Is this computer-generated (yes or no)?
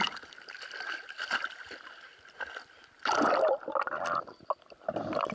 no